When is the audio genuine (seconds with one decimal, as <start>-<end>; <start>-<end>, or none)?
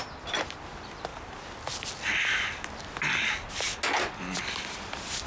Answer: 1.1-4.1